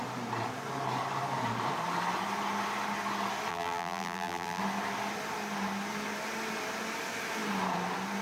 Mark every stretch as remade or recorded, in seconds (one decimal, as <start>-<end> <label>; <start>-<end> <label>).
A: 0.0-3.5 recorded; 3.5-4.6 remade; 4.6-8.2 recorded